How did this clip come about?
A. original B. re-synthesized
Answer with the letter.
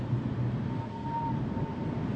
A